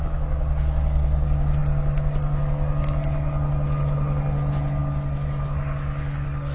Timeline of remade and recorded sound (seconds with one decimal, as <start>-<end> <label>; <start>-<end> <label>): 0.0-6.5 recorded